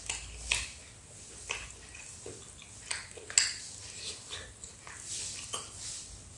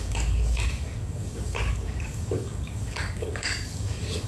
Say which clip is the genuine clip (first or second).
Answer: first